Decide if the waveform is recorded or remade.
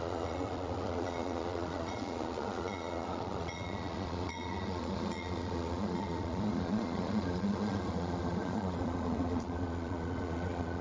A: remade